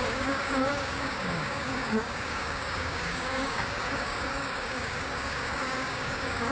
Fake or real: fake